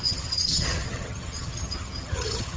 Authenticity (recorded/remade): remade